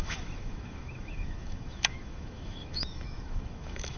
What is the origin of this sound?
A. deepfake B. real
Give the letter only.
A